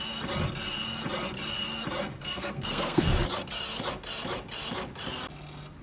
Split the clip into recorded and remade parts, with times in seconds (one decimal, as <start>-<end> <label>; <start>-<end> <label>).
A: 0.0-2.2 recorded; 2.2-3.1 remade; 3.1-5.8 recorded